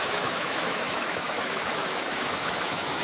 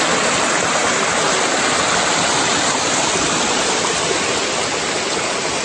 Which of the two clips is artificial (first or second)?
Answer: first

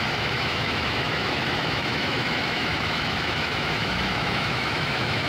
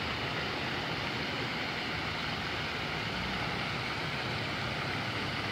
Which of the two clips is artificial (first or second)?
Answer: first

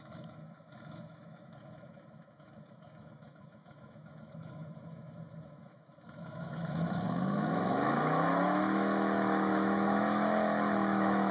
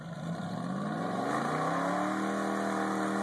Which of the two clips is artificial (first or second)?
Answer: first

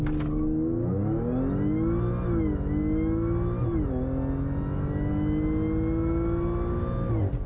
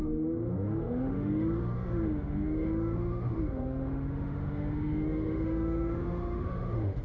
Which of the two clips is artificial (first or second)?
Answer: second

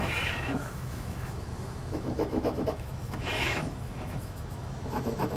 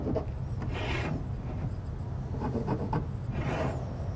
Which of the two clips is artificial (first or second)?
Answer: first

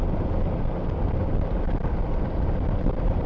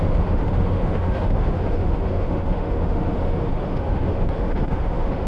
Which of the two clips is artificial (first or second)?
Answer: second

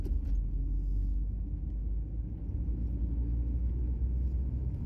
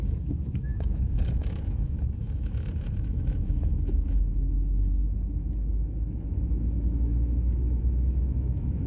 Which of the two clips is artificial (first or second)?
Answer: second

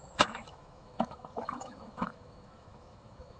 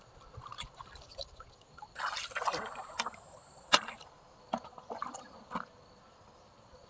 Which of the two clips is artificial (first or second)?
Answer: first